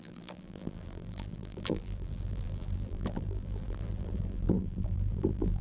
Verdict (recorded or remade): remade